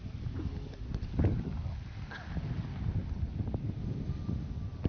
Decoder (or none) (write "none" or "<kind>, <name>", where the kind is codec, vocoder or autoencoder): none